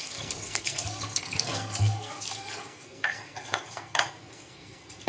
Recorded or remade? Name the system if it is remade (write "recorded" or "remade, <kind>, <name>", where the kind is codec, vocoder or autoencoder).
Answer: remade, codec, SNAC